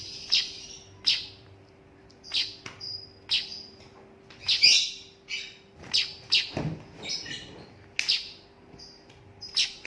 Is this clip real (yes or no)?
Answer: yes